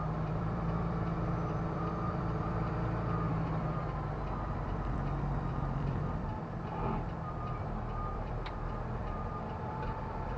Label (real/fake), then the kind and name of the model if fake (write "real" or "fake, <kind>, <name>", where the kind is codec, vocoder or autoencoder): fake, vocoder, BigVGAN v2